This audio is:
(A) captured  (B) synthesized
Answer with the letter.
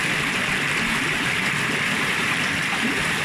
B